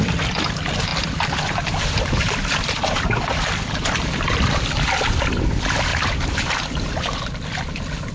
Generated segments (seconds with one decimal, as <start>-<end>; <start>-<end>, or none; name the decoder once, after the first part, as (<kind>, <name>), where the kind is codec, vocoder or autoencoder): 0.9-4.1 (vocoder, BigVGAN v2); 5.9-6.5